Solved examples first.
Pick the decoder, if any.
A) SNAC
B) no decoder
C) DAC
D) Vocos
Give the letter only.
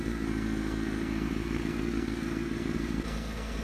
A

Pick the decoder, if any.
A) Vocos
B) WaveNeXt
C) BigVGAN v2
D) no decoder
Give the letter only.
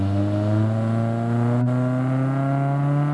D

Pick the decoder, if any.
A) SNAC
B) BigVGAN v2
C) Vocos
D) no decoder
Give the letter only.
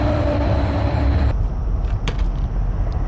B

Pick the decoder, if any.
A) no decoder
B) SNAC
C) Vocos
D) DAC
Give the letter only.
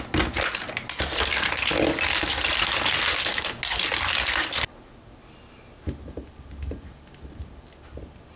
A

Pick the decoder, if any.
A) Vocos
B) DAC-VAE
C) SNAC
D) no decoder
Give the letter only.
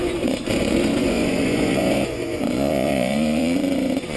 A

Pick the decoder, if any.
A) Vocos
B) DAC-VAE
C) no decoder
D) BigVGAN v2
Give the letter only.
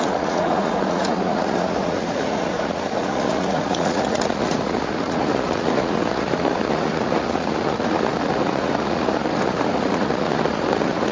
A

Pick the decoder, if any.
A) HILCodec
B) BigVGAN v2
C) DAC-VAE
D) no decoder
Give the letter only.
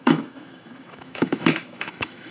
C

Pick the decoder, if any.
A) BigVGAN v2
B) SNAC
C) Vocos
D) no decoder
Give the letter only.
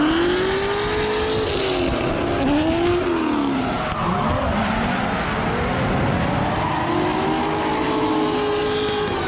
D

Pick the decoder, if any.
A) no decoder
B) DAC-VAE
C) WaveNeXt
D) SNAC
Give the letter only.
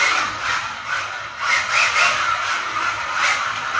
A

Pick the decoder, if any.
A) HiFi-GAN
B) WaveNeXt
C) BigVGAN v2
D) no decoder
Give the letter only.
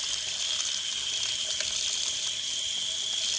D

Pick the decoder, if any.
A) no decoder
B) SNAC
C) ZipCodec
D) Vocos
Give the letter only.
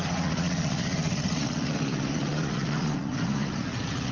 D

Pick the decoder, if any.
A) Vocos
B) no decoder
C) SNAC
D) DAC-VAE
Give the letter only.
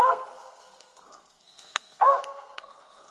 C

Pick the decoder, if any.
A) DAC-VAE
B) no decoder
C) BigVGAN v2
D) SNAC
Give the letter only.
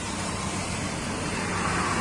B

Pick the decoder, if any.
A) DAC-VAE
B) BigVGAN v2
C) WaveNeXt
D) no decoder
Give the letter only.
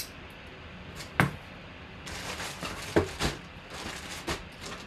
D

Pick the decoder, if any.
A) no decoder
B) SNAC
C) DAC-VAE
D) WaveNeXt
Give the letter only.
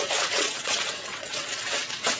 D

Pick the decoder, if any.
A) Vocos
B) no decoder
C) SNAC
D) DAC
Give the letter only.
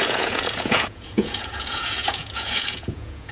A